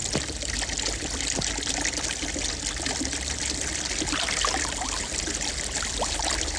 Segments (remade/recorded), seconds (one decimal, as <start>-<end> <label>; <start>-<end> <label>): 0.0-6.6 recorded